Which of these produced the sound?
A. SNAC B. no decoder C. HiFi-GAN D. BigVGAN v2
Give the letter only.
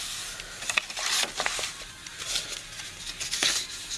B